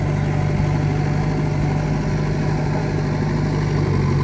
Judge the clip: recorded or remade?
recorded